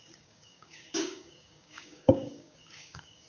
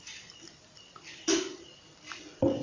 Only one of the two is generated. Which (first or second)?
first